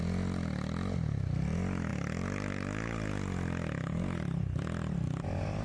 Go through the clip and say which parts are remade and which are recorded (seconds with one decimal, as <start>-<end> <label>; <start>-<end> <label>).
0.0-5.6 recorded